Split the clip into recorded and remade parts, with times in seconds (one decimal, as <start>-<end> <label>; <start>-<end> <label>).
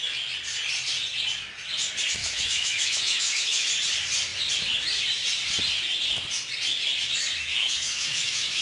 0.0-2.2 recorded; 2.2-3.7 remade; 3.7-7.4 recorded; 7.4-8.6 remade